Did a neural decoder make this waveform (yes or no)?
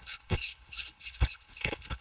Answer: yes